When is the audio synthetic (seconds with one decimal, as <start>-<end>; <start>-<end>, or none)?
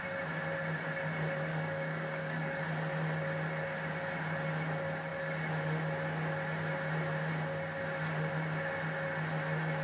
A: 1.5-2.6